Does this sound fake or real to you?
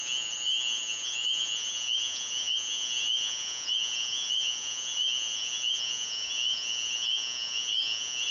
fake